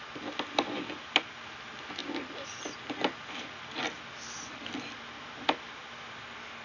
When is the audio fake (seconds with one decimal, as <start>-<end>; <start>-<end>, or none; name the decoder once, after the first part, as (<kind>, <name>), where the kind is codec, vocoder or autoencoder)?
none